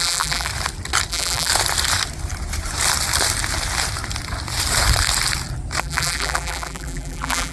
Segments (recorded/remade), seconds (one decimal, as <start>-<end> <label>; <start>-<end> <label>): 0.0-0.5 remade; 0.5-1.1 recorded; 1.1-1.5 remade; 1.5-5.8 recorded; 5.8-7.5 remade